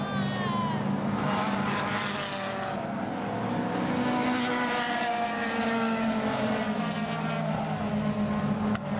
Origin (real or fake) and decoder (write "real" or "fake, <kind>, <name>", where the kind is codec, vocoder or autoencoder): real